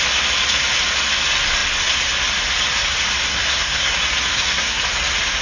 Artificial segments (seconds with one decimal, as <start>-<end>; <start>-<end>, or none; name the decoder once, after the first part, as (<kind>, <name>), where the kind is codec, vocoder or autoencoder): 3.3-3.9 (codec, SNAC); 4.3-4.8